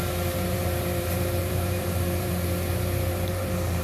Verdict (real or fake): fake